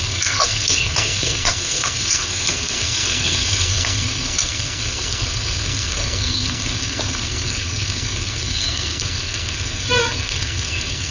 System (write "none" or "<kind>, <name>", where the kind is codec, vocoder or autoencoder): codec, SNAC